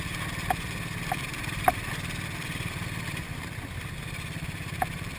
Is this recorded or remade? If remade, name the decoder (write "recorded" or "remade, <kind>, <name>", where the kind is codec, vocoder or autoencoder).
recorded